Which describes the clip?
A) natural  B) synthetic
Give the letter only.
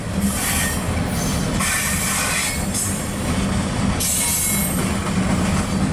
A